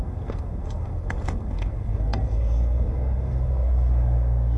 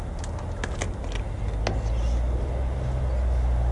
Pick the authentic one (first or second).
second